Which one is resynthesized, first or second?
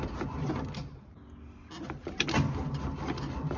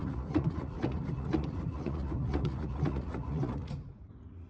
second